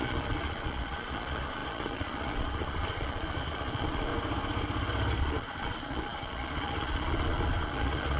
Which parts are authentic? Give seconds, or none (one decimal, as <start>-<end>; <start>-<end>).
4.1-5.2